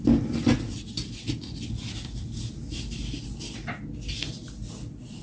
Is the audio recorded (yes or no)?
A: yes